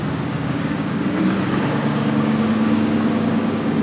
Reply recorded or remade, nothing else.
remade